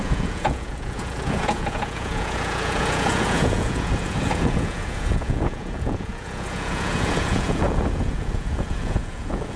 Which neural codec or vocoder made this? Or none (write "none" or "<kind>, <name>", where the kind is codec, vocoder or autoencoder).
vocoder, Vocos